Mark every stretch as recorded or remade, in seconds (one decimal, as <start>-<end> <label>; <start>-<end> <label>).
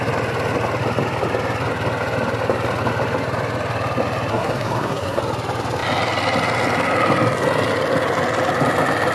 0.0-4.3 recorded; 4.3-5.2 remade; 5.2-9.1 recorded